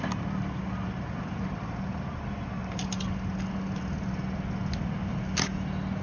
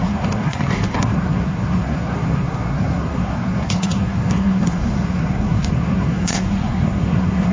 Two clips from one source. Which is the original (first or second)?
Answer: first